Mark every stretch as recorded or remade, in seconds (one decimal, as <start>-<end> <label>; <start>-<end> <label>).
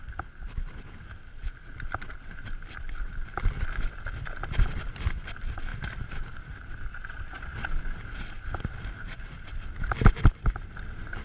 0.0-6.9 recorded; 6.9-7.8 remade; 7.8-11.2 recorded